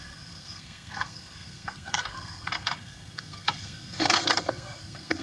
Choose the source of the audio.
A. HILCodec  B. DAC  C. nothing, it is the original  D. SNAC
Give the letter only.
D